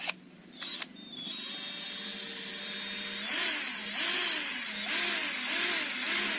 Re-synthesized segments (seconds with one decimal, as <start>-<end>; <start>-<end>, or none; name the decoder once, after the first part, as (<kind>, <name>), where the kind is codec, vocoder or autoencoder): none